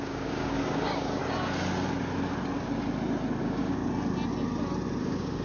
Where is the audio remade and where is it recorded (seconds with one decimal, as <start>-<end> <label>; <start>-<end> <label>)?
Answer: 0.0-1.2 remade; 1.2-3.4 recorded; 3.4-3.8 remade; 3.8-5.0 recorded; 5.0-5.4 remade